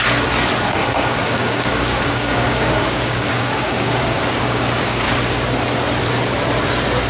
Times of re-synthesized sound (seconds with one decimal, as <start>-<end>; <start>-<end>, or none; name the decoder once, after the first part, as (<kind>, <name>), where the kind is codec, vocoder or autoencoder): 0.8-5.1 (codec, DAC)